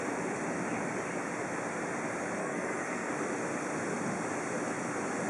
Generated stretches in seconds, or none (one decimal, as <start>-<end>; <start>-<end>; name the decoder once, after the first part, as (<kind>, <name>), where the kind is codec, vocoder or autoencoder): 2.4-3.1 (codec, SNAC)